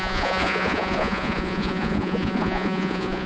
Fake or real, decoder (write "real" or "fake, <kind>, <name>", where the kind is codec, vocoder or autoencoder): fake, vocoder, Vocos